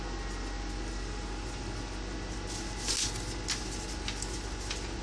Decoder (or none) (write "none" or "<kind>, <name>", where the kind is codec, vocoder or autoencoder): none